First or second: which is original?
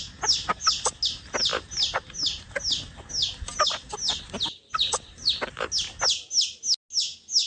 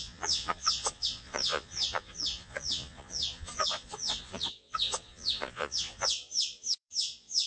first